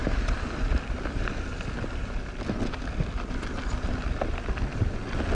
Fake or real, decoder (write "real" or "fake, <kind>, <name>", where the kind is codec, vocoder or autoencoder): real